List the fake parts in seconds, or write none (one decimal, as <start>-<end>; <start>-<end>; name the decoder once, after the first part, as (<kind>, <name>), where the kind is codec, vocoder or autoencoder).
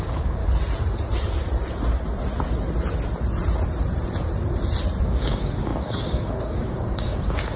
0.0-0.4 (codec, DAC); 5.0-7.6